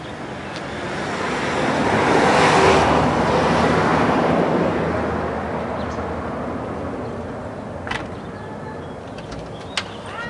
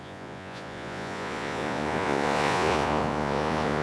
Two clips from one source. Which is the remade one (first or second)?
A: second